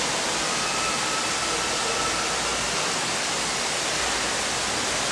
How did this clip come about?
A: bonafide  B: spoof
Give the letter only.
A